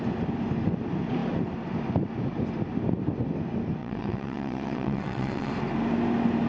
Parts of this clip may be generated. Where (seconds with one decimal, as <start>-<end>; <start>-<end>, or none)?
3.8-5.5